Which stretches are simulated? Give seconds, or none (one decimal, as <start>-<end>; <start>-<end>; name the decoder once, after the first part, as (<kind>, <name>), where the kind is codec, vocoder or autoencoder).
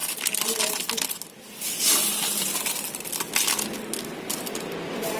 none